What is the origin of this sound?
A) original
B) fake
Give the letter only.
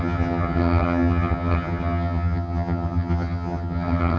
B